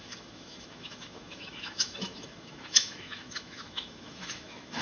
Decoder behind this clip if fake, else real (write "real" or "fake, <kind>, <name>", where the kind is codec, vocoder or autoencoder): fake, autoencoder, DAC-VAE